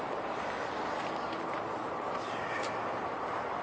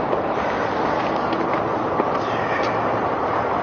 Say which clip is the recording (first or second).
first